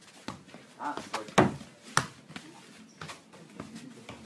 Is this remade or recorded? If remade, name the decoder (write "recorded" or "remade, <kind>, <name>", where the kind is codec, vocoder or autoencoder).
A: recorded